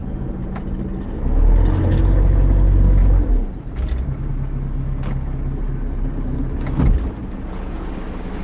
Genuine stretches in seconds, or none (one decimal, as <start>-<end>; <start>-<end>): 0.8-7.2; 7.9-8.4